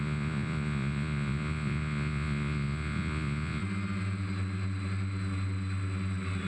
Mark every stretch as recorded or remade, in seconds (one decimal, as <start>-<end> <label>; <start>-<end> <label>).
0.0-3.6 remade; 3.6-6.5 recorded